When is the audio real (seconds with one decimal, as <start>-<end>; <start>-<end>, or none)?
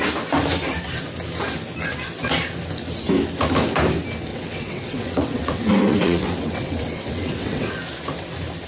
0.0-4.3; 7.7-8.7